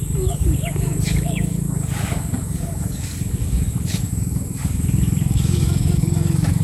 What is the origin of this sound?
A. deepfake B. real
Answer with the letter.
A